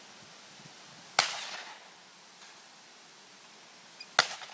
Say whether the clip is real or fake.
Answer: real